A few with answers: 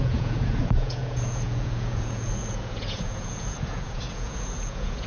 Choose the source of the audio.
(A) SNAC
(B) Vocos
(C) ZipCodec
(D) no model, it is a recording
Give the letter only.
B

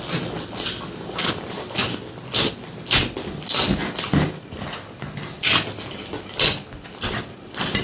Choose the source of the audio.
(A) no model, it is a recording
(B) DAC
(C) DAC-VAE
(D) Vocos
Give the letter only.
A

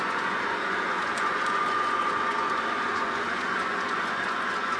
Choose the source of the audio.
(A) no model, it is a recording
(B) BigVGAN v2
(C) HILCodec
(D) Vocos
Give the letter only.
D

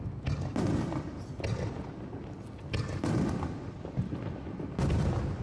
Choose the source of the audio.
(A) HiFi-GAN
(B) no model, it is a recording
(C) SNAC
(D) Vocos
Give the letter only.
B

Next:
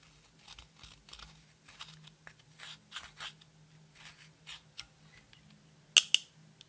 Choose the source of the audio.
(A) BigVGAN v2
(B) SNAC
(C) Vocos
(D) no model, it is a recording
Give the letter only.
D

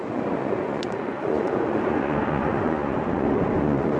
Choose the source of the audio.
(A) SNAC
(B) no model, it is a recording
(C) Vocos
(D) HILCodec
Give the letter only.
C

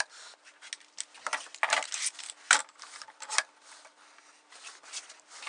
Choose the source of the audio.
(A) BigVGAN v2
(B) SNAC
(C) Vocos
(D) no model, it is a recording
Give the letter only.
D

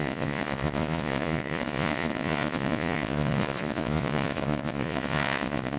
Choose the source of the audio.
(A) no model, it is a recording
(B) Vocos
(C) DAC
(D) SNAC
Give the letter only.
B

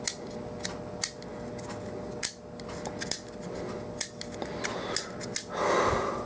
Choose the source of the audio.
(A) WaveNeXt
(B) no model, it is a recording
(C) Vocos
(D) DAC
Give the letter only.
B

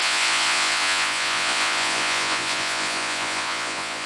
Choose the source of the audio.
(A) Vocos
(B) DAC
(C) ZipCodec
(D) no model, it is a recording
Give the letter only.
A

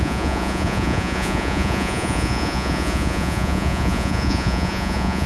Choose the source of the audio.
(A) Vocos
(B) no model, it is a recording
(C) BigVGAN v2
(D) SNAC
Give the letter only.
A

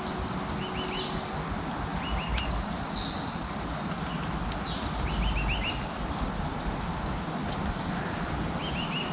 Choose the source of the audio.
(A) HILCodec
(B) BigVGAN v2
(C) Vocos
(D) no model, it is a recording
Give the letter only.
D